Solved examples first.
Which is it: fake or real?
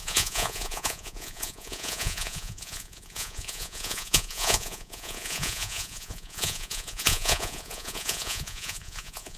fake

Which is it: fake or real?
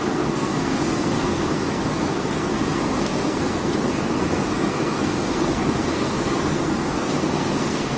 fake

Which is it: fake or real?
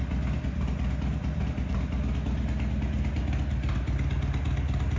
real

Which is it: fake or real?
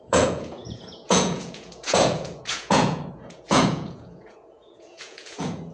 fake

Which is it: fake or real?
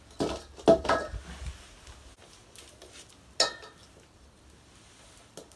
real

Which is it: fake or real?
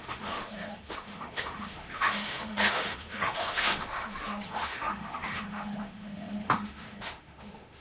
fake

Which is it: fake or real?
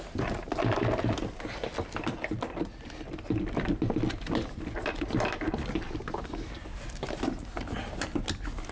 real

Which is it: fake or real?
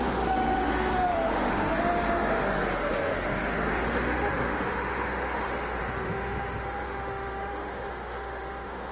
fake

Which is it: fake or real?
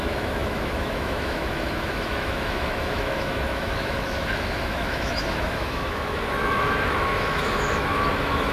fake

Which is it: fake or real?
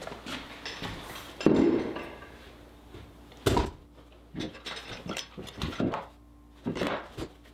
real